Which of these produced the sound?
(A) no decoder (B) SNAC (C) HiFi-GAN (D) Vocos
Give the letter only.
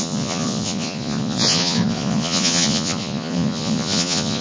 D